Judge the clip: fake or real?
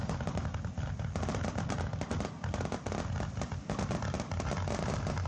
real